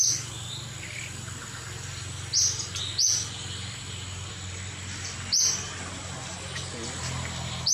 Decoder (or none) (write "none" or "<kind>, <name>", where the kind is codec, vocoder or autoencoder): none